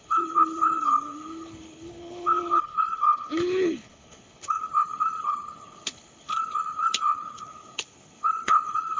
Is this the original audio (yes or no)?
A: no